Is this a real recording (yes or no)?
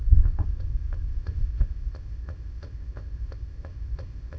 no